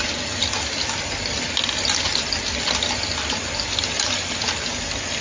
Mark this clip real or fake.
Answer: real